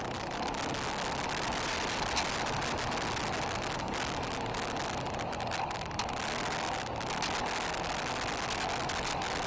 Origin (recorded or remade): recorded